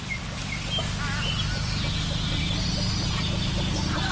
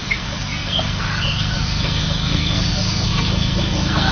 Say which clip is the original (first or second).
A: first